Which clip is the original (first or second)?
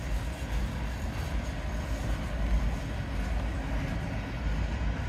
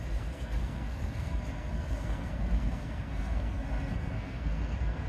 first